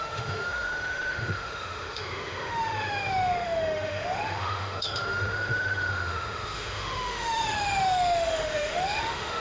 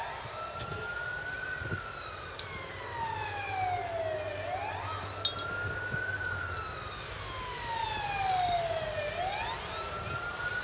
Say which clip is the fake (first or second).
first